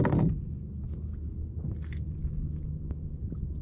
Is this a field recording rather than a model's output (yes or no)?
yes